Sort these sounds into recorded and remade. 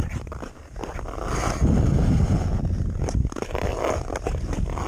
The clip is recorded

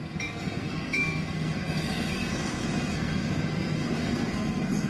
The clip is remade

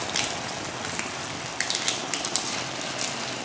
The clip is recorded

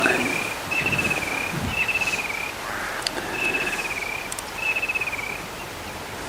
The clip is remade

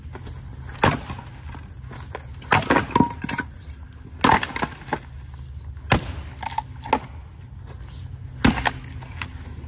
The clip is recorded